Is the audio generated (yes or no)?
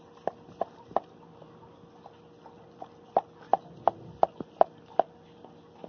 no